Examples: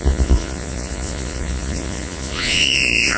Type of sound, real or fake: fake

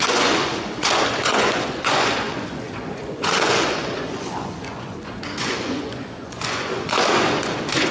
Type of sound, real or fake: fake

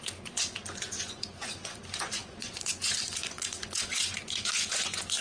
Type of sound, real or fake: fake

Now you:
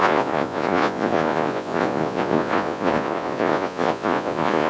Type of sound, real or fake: fake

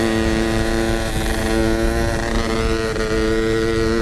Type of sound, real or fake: real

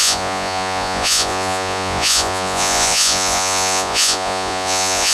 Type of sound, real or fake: fake